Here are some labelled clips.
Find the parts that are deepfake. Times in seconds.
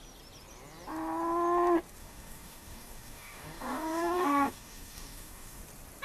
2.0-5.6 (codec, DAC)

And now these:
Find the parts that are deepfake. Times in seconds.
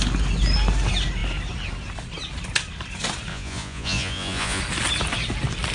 3.3-4.6 (vocoder, Vocos)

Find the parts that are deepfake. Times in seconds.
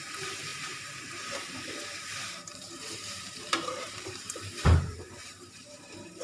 0.0-6.2 (vocoder, BigVGAN v2)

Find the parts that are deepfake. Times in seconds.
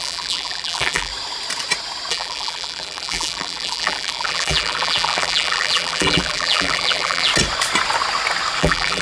0.0-1.1 (vocoder, BigVGAN v2); 2.1-7.3; 8.6-9.0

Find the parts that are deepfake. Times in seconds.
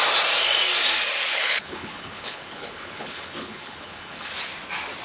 1.3-4.3 (codec, HILCodec)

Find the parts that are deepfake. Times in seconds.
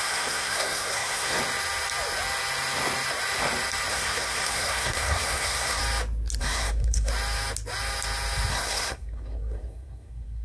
0.0-1.4 (codec, SNAC); 3.9-5.8; 6.4-7.1; 8.5-10.4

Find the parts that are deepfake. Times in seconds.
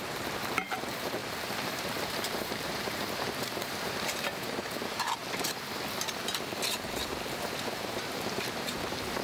0.0-5.2 (vocoder, BigVGAN v2); 7.1-9.2